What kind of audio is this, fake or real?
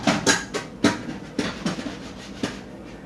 real